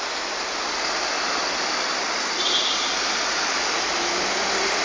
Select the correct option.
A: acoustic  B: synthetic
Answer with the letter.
A